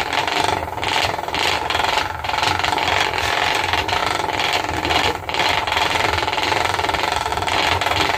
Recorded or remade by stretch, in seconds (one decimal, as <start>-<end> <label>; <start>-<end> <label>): 0.0-0.6 remade; 0.6-1.4 recorded; 1.4-4.0 remade; 4.0-5.2 recorded; 5.2-7.3 remade; 7.3-8.2 recorded